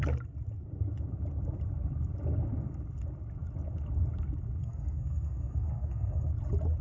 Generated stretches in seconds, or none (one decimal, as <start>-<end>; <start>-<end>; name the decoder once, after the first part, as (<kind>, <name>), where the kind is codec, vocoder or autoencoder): 4.6-6.3 (codec, SNAC)